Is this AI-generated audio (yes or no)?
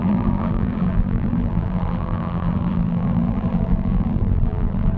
yes